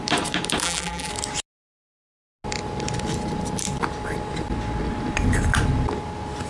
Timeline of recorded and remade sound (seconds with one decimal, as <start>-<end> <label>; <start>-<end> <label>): 0.0-0.6 recorded; 0.6-1.1 remade; 1.1-6.5 recorded